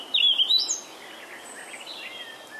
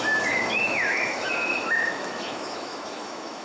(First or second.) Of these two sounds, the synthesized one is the second